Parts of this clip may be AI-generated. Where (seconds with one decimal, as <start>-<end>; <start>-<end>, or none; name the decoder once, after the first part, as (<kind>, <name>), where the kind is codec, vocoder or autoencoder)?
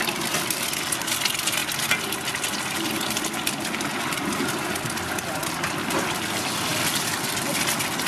none